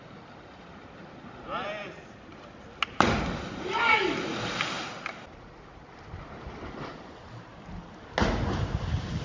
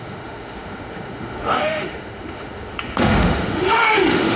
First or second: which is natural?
first